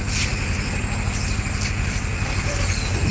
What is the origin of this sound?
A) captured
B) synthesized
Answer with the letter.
A